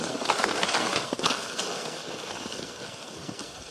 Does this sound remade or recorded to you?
remade